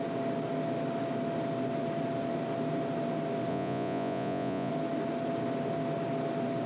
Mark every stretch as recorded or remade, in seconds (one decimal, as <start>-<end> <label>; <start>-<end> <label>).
0.0-3.5 recorded; 3.5-4.7 remade; 4.7-6.7 recorded